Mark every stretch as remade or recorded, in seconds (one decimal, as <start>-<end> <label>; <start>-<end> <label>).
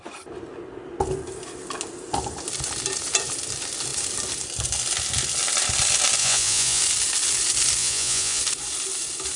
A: 0.0-6.2 recorded; 6.2-6.8 remade; 6.8-7.8 recorded; 7.8-8.4 remade; 8.4-9.4 recorded